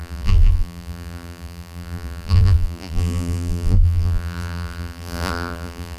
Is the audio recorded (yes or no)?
no